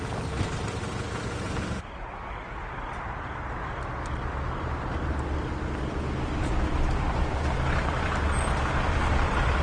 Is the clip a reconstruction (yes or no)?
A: no